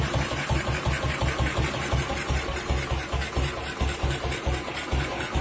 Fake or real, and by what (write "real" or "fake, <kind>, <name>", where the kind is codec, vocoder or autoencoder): real